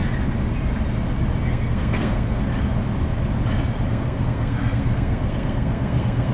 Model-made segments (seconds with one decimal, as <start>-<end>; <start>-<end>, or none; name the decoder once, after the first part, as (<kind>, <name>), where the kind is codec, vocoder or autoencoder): 1.5-2.4 (codec, SNAC); 3.9-6.3